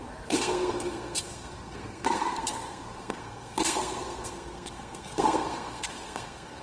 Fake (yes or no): yes